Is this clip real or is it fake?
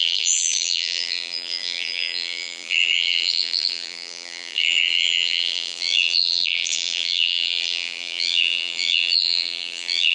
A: fake